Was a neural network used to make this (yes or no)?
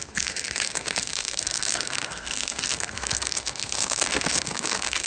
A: yes